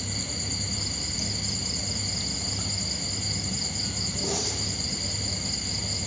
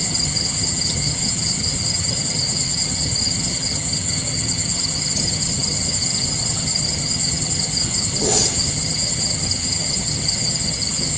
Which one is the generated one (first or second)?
second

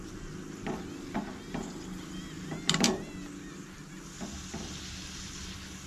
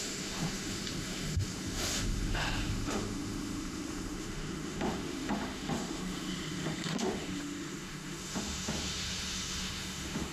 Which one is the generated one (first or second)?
second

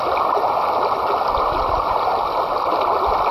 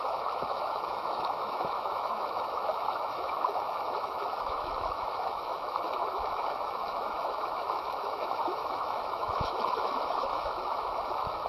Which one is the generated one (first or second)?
second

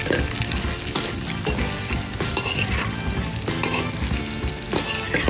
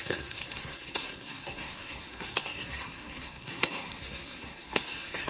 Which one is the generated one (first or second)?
second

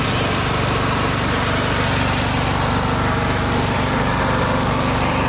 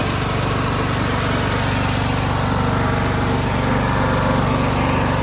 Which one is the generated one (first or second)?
first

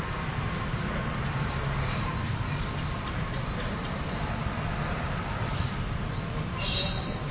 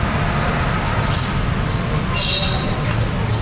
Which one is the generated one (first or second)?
first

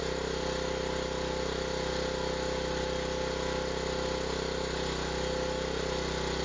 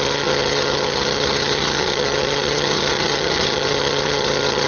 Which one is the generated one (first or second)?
second